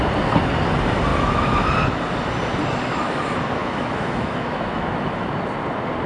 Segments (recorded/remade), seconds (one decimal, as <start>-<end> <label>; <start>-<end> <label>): 0.0-3.6 recorded; 3.6-5.3 remade; 5.3-6.1 recorded